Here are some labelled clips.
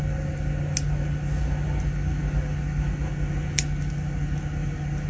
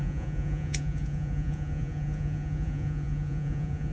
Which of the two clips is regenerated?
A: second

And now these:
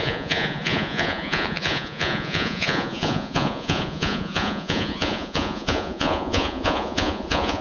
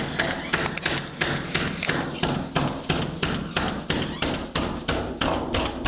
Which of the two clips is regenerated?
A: first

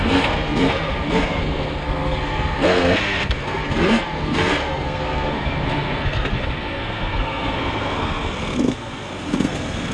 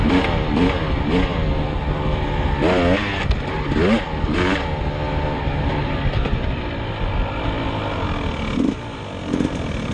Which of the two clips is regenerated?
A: first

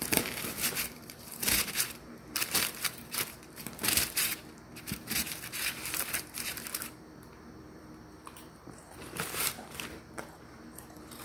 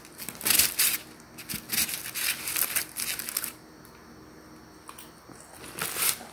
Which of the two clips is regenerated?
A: first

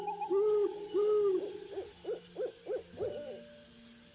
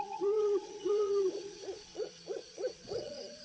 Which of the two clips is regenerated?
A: second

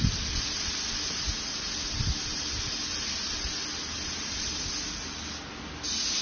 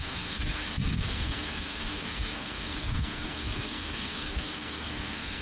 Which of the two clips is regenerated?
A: second